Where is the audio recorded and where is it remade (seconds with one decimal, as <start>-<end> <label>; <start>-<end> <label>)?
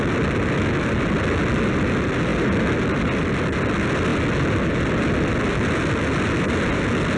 0.0-7.2 recorded